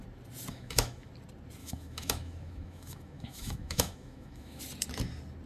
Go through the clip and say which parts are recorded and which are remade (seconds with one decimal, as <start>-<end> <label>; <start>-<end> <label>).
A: 0.0-0.5 recorded; 0.5-1.1 remade; 1.1-1.6 recorded; 1.6-4.6 remade; 4.6-5.5 recorded